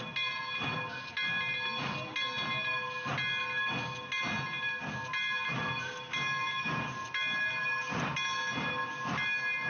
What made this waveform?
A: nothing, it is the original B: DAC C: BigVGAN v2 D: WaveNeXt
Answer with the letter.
A